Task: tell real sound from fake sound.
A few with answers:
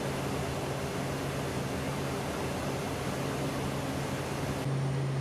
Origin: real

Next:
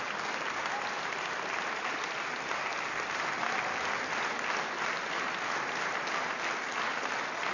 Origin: real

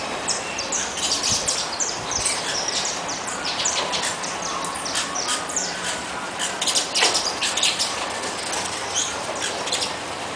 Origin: fake